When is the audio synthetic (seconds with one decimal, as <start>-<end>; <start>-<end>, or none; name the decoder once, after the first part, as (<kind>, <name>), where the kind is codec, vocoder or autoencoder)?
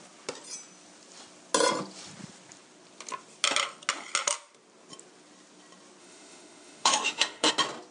6.0-7.5 (autoencoder, DAC-VAE)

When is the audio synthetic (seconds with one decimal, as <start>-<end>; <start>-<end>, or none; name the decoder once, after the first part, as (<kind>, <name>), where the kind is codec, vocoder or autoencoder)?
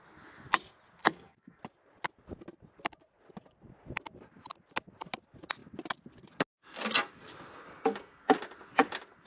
1.0-1.6 (codec, SNAC)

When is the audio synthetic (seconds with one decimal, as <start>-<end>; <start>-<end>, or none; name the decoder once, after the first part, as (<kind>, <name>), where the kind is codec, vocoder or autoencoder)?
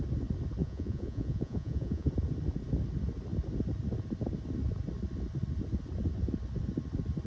0.6-2.1 (vocoder, Vocos)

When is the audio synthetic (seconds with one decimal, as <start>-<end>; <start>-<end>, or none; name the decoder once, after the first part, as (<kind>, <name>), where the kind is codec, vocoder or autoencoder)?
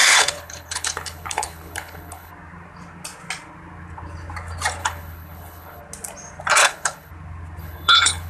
0.0-2.3 (codec, HILCodec); 4.8-5.8; 6.6-7.1; 7.6-8.3